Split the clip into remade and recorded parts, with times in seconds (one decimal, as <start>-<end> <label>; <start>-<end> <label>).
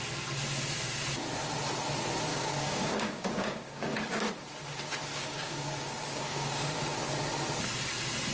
0.0-2.3 recorded; 2.3-4.3 remade; 4.3-5.1 recorded; 5.1-7.1 remade; 7.1-8.3 recorded